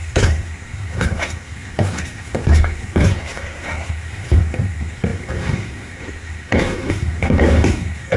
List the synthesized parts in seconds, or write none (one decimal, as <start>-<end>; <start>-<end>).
0.0-8.2